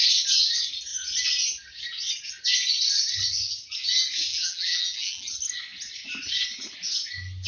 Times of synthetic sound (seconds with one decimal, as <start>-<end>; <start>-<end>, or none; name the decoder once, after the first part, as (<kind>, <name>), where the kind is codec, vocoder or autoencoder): 4.3-5.3 (vocoder, BigVGAN v2)